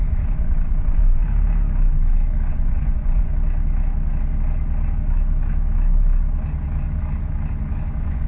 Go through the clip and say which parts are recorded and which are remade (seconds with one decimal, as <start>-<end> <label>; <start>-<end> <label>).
0.0-1.2 remade; 1.2-2.5 recorded; 2.5-3.3 remade; 3.3-7.9 recorded; 7.9-8.3 remade